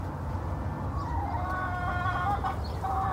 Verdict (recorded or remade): recorded